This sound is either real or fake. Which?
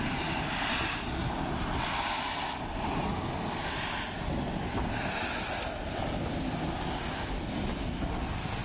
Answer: real